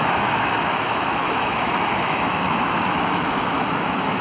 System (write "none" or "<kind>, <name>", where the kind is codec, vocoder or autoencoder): autoencoder, DAC-VAE